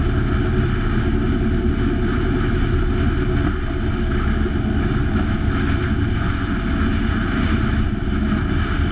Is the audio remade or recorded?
recorded